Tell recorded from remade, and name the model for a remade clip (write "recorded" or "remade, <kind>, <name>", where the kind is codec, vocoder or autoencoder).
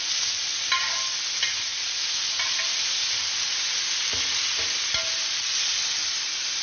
recorded